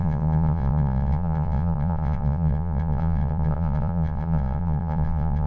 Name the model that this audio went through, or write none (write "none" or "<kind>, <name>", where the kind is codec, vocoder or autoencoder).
vocoder, Vocos